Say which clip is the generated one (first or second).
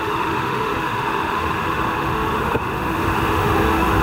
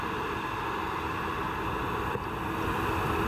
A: first